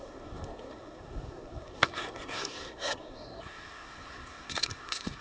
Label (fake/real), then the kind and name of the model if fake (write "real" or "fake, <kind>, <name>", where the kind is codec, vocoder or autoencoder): fake, codec, SNAC